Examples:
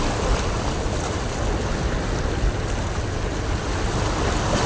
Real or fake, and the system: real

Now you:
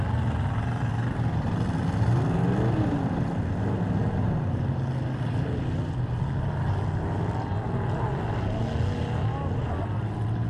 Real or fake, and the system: real